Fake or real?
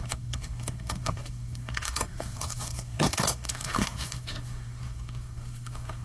fake